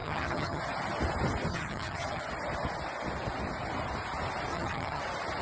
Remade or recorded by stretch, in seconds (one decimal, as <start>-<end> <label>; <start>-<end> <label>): 0.0-0.6 remade; 0.6-1.5 recorded; 1.5-2.2 remade; 2.2-4.5 recorded; 4.5-5.0 remade; 5.0-5.4 recorded